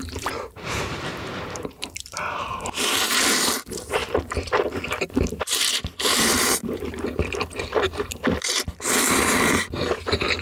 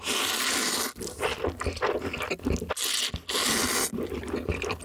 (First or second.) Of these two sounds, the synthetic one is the first